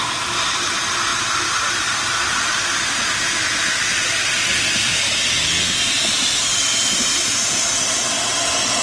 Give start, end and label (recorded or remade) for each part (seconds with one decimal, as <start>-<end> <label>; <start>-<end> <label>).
0.0-1.1 recorded; 1.1-2.8 remade; 2.8-3.9 recorded; 3.9-6.6 remade; 6.6-8.8 recorded